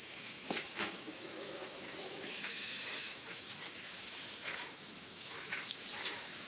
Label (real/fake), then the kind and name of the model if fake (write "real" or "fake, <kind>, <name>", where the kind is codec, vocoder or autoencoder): fake, autoencoder, DAC-VAE